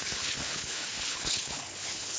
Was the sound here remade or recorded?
remade